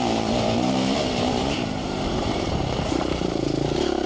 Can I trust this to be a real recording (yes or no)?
no